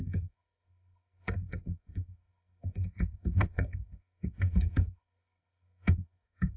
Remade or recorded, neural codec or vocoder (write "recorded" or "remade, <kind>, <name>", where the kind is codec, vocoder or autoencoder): remade, codec, SNAC